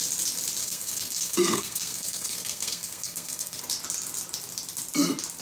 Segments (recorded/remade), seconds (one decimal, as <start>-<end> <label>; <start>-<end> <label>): 0.0-0.6 recorded; 0.6-3.6 remade; 3.6-5.4 recorded